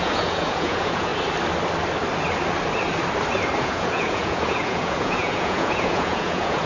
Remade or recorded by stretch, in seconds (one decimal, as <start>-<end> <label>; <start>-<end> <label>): 0.0-1.1 remade; 1.1-3.6 recorded; 3.6-6.7 remade